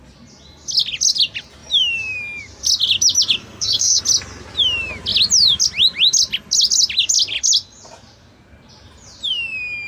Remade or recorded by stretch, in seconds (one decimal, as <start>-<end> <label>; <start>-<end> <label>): 0.0-3.4 recorded; 3.4-4.0 remade; 4.0-9.9 recorded